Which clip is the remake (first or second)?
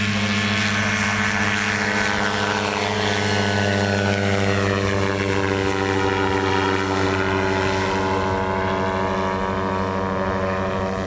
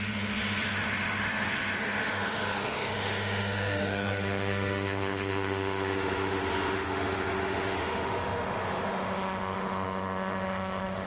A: second